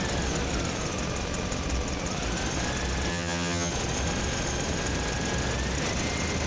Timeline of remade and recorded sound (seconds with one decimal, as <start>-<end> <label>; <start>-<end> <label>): 0.0-3.1 recorded; 3.1-3.7 remade; 3.7-6.5 recorded